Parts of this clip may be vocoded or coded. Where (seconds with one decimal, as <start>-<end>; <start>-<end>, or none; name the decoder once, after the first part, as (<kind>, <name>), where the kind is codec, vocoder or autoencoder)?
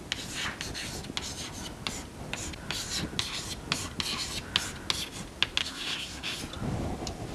5.6-6.4 (codec, SNAC)